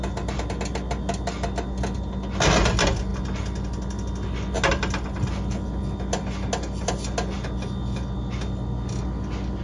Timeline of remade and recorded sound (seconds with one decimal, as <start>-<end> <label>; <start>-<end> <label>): 0.0-9.6 recorded